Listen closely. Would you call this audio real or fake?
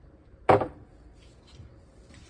fake